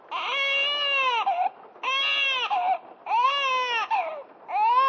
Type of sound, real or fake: real